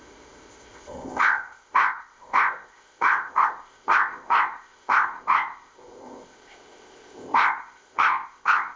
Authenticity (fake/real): fake